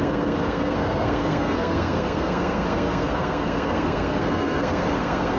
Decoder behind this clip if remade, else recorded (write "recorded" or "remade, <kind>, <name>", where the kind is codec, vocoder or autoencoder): remade, codec, SNAC